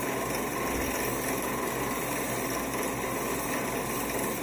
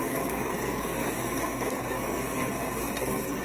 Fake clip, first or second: second